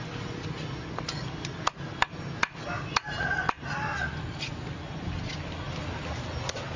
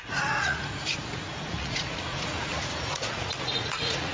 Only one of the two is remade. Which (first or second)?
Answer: second